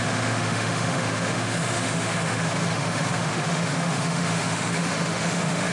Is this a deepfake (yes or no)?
yes